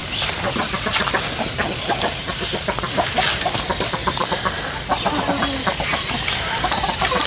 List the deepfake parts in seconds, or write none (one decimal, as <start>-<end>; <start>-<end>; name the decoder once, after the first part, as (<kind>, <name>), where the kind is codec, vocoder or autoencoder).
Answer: none